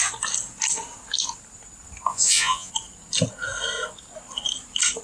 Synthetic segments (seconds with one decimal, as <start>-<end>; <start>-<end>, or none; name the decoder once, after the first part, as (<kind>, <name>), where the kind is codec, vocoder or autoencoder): 2.1-2.7 (vocoder, Vocos)